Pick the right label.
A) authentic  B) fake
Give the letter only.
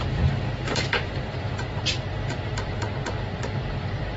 B